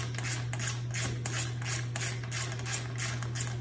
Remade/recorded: recorded